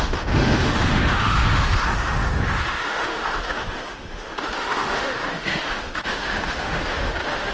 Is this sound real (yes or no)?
no